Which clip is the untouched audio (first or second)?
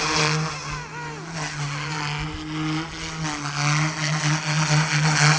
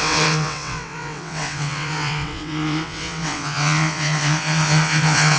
first